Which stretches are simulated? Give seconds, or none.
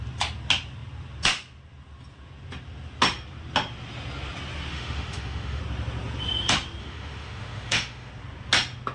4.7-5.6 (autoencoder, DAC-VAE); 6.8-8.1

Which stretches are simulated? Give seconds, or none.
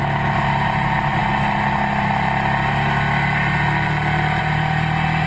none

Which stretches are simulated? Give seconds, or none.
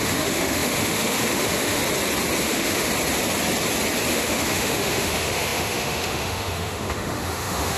0.0-1.8 (autoencoder, DAC-VAE); 2.4-2.9; 4.1-7.8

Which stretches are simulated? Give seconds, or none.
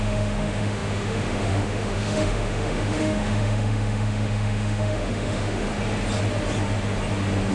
0.0-5.7 (autoencoder, DAC-VAE)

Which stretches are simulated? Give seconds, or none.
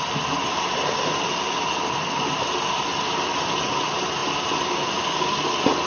none